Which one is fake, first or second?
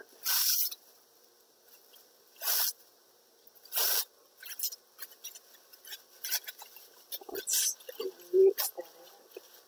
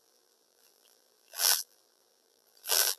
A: second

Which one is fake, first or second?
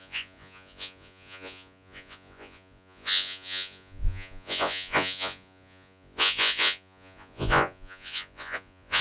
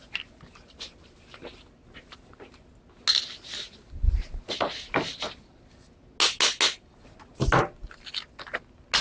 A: first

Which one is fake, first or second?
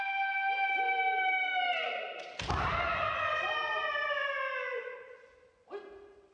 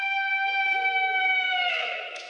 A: second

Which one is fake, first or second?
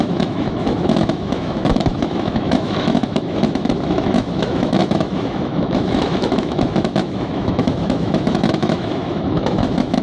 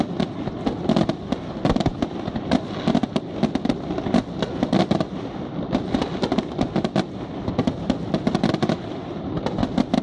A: first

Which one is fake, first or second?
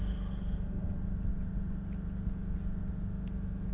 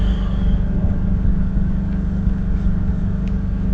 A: second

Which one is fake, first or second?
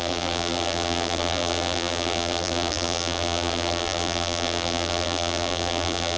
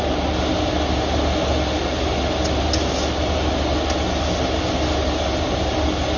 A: first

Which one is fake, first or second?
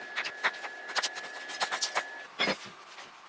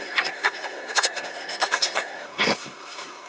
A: second